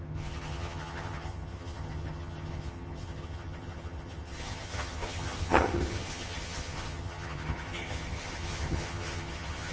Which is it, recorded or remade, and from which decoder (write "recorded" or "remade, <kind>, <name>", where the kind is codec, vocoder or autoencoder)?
remade, vocoder, HiFi-GAN